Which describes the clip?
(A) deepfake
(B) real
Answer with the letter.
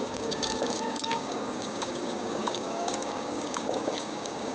A